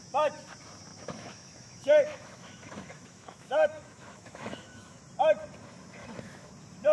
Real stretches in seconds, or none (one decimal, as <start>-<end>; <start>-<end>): 0.0-0.9; 5.0-6.0; 6.5-6.9